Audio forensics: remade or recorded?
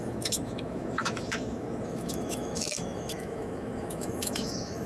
remade